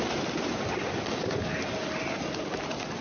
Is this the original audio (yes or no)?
yes